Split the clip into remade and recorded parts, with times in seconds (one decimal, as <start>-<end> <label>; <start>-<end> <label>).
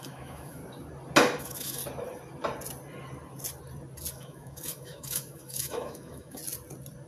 0.0-0.6 remade; 0.6-1.4 recorded; 1.4-1.8 remade; 1.8-4.1 recorded; 4.1-6.4 remade; 6.4-7.1 recorded